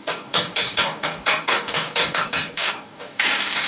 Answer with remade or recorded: remade